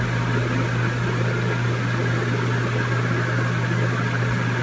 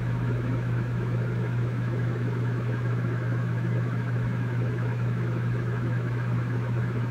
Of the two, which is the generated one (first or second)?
second